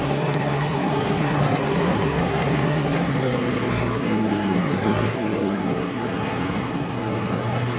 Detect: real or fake fake